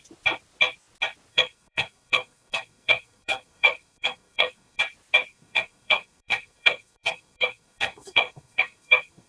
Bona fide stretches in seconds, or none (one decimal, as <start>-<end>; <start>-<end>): 0.0-1.3; 4.8-5.3